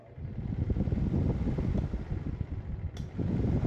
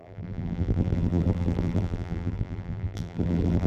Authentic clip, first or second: first